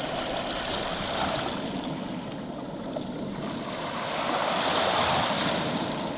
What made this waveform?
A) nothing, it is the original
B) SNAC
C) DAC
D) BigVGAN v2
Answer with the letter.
A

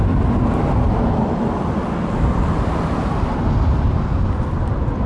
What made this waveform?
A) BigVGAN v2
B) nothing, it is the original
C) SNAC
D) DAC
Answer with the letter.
B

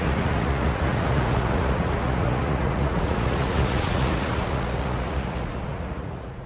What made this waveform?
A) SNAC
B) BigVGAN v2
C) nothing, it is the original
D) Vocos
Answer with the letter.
D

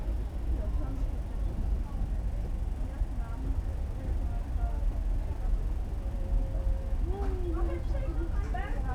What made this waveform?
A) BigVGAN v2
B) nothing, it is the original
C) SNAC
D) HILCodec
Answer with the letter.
B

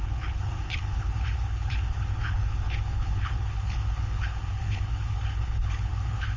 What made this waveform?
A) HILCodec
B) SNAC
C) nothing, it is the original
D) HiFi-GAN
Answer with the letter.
A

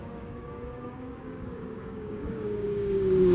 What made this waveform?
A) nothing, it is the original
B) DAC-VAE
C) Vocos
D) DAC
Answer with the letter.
D